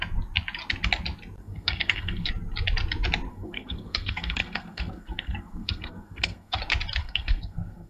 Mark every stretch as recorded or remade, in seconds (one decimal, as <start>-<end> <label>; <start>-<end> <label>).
0.0-1.4 recorded; 1.4-2.3 remade; 2.3-3.3 recorded; 3.3-6.6 remade; 6.6-7.0 recorded; 7.0-7.9 remade